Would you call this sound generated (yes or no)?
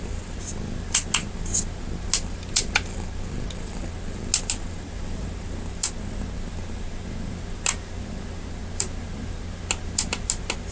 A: no